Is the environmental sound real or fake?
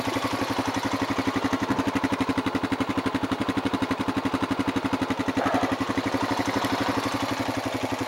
real